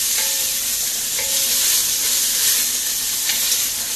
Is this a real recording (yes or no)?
yes